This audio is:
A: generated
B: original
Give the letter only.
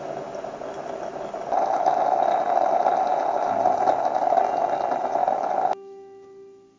B